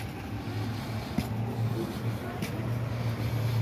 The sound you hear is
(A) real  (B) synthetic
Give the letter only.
A